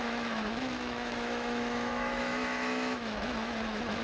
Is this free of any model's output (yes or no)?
no